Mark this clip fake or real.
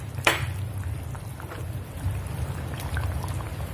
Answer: fake